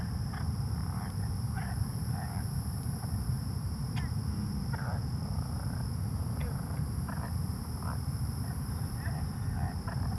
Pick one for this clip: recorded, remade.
remade